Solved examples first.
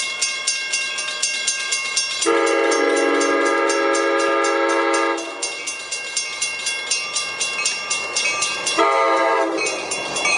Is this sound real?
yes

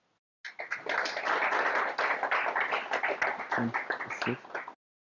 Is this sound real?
yes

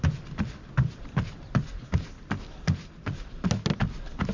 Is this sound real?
yes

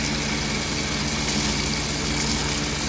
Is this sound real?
yes